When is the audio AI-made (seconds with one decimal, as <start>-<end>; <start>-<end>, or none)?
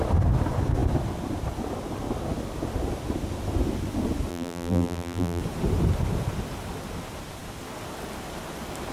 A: 4.3-5.4